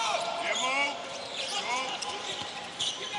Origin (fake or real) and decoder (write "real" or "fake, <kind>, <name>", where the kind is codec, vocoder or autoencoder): fake, vocoder, BigVGAN v2